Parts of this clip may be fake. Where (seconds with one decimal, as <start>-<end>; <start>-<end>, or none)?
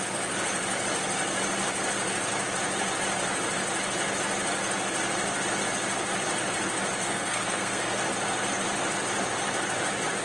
7.0-8.0